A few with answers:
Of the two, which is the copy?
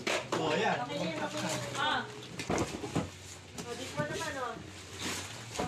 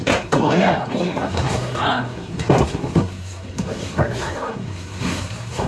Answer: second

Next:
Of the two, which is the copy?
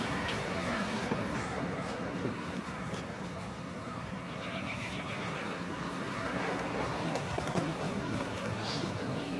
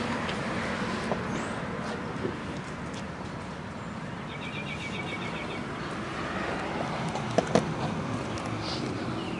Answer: first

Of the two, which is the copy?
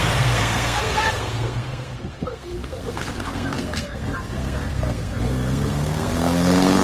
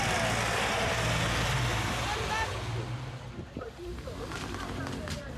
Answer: first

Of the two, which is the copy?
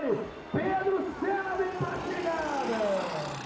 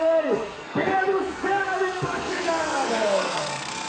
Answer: second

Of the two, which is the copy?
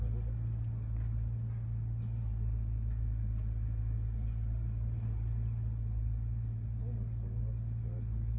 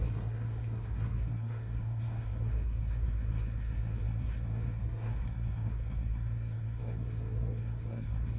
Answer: second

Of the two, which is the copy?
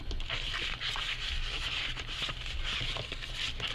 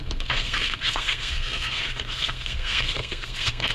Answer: second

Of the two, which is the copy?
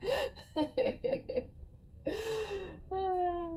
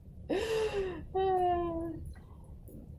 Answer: first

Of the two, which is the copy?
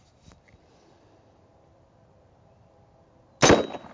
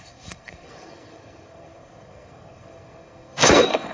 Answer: second